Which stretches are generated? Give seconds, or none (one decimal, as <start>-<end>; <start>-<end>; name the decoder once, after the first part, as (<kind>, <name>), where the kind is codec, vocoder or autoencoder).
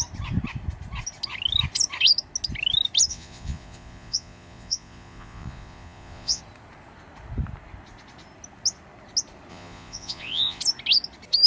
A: 3.1-6.4 (vocoder, Vocos); 9.5-10.6